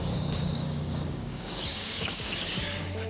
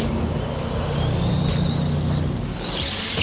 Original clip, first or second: second